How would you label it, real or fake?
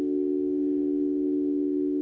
fake